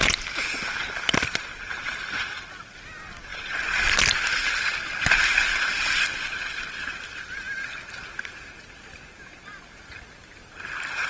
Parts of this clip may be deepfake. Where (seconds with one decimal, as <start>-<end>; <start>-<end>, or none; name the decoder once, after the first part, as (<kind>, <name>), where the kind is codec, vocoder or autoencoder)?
none